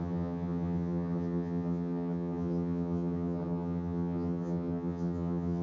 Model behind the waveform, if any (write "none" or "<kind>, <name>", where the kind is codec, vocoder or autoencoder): vocoder, HiFi-GAN